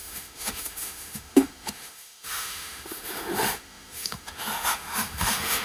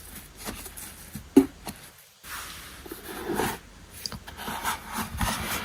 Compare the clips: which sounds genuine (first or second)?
second